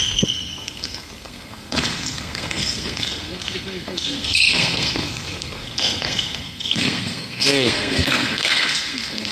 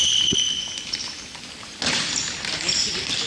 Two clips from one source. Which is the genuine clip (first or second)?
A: second